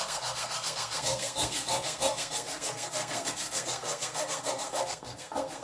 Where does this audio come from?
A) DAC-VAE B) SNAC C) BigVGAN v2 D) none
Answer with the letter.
B